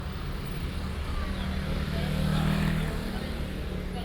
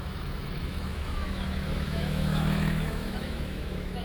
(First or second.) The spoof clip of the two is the second